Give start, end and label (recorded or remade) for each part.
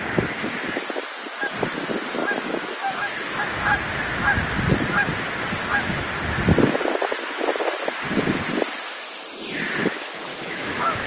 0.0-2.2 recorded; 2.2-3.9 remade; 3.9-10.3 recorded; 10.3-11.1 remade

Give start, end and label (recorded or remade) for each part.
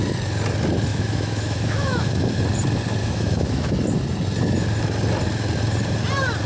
0.0-0.9 recorded; 0.9-2.4 remade; 2.4-3.0 recorded; 3.0-3.8 remade; 3.8-6.5 recorded